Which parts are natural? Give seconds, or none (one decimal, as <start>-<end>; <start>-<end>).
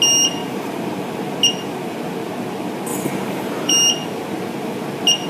0.0-0.4; 1.1-2.9; 3.7-5.3